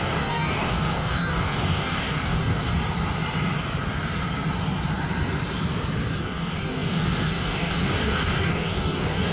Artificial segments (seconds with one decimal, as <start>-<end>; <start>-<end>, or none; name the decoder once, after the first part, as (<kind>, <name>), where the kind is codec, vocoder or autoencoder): 0.0-2.7 (codec, DAC); 6.2-9.3